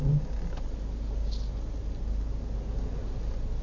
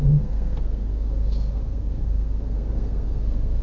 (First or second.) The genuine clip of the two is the first